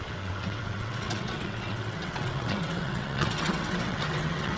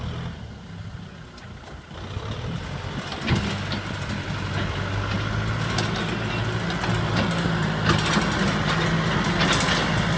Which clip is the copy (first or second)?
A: first